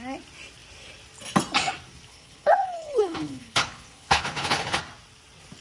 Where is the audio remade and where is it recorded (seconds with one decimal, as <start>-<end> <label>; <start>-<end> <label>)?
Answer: 0.0-2.1 recorded; 2.1-4.8 remade; 4.8-5.6 recorded